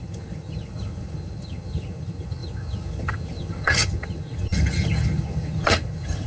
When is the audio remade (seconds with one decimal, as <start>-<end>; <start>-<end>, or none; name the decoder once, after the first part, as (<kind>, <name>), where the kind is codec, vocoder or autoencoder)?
0.0-6.3 (vocoder, HiFi-GAN)

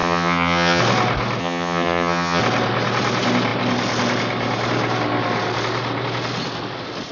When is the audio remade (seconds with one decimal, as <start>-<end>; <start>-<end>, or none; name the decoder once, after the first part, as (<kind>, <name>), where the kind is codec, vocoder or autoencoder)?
0.0-0.8 (vocoder, HiFi-GAN); 1.4-2.4

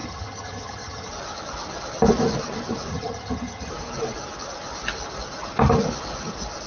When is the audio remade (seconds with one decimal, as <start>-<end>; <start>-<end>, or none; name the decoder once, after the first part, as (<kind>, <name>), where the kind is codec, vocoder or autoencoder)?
0.0-1.1 (vocoder, HiFi-GAN); 2.9-3.7

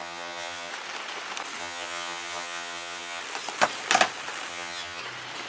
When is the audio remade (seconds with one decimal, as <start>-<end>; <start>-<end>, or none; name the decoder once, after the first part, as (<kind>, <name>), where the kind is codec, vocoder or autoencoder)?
0.0-0.7 (vocoder, HiFi-GAN); 1.6-3.2; 4.5-5.0